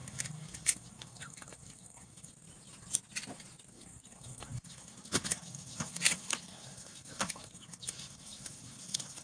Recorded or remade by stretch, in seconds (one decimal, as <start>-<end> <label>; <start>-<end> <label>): 0.0-2.3 remade; 2.3-3.7 recorded; 3.7-9.2 remade